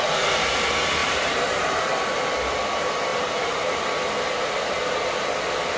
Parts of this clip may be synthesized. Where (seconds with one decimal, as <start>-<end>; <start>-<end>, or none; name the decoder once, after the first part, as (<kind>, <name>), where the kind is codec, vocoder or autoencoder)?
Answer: 1.0-2.2 (vocoder, BigVGAN v2); 3.1-3.8